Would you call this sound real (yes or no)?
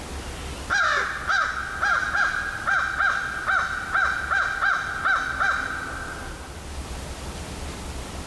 yes